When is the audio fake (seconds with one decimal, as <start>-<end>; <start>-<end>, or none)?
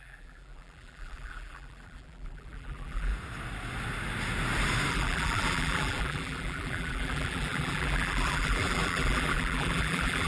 0.0-3.1; 4.9-10.3